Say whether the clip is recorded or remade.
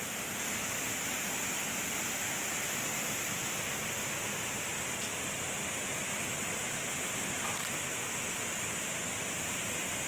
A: recorded